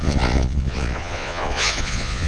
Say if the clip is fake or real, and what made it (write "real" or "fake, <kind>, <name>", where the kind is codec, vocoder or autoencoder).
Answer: fake, vocoder, Vocos